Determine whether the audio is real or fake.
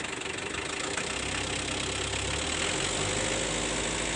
real